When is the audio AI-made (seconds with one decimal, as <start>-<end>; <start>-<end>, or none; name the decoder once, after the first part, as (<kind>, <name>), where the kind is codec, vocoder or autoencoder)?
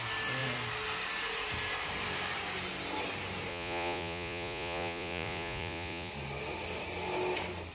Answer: 3.5-6.1 (vocoder, Vocos)